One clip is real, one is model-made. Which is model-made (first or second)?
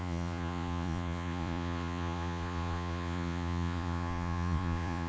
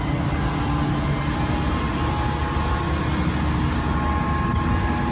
first